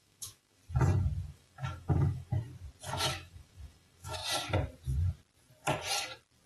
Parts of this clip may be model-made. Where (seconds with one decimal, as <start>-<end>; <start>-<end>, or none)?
0.0-0.6; 1.3-2.3; 2.9-4.2